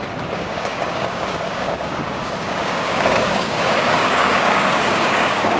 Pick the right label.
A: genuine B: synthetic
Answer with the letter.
B